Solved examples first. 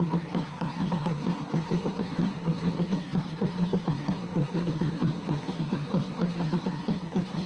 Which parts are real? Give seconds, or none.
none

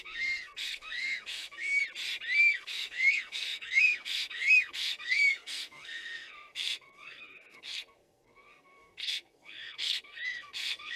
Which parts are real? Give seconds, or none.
1.8-2.4

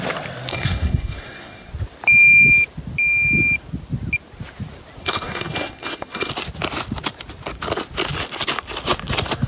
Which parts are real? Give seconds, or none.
0.0-0.5; 1.7-5.0; 6.3-9.5

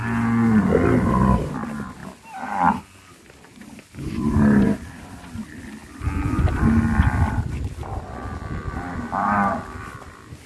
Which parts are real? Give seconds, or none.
0.0-10.5

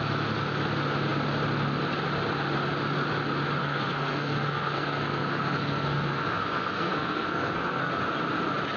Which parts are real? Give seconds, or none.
0.0-3.6; 7.9-8.8

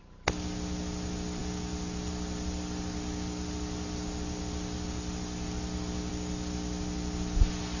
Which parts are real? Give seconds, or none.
0.0-7.8

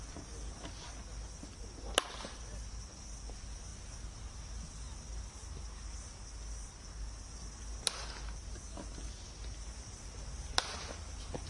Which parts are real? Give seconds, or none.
0.0-11.5

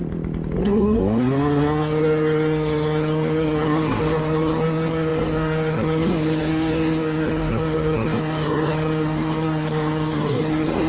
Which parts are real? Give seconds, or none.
0.0-0.6